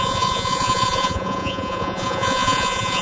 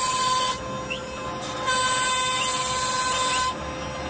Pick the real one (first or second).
second